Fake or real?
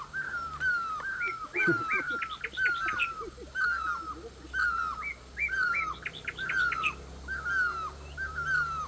real